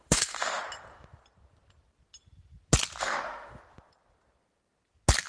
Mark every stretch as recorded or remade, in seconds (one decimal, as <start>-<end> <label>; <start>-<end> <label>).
0.0-0.6 remade; 0.6-3.0 recorded; 3.0-3.6 remade; 3.6-5.3 recorded